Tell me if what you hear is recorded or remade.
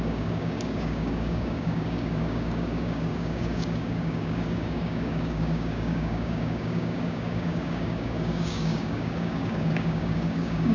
remade